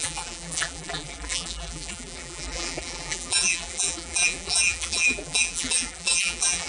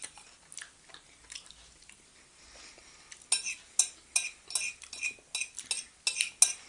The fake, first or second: first